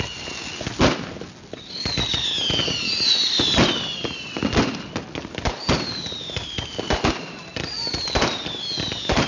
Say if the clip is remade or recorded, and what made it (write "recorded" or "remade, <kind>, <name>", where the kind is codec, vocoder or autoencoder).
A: recorded